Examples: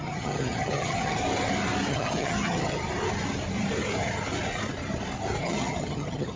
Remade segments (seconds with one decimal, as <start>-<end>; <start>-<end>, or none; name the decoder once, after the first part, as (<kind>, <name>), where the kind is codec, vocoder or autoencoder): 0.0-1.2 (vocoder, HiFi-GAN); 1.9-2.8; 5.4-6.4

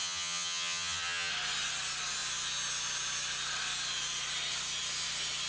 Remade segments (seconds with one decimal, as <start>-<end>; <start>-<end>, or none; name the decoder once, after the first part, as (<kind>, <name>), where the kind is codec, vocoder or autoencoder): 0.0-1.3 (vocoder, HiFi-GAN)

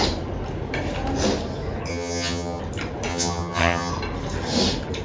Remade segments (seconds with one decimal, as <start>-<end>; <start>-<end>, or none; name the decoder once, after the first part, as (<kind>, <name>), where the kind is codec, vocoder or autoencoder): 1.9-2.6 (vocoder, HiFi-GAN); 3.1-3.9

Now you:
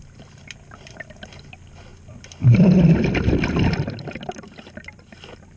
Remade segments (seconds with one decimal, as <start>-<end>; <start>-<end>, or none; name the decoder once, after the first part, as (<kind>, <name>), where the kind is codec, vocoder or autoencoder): none

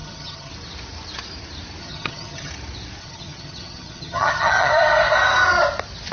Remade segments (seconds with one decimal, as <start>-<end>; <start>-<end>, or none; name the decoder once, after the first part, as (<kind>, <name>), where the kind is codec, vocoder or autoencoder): 0.0-0.5 (vocoder, HiFi-GAN); 1.8-2.5; 3.0-4.7